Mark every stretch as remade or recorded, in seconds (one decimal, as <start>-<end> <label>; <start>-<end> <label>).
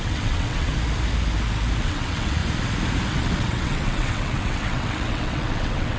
0.0-0.7 remade; 0.7-1.8 recorded; 1.8-2.4 remade; 2.4-3.1 recorded; 3.1-6.0 remade